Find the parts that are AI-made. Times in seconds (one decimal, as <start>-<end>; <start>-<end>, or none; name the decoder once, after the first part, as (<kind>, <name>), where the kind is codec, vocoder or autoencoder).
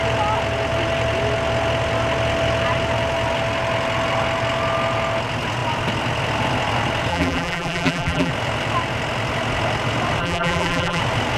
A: 7.1-8.3 (vocoder, BigVGAN v2); 10.2-11.0